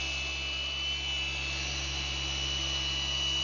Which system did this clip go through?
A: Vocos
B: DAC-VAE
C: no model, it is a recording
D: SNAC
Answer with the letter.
C